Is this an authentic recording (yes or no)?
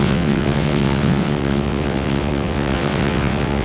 no